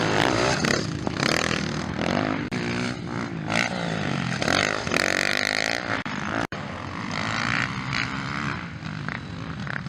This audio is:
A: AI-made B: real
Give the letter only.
A